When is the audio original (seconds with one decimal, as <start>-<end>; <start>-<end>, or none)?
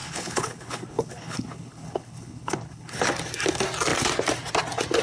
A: 3.0-5.0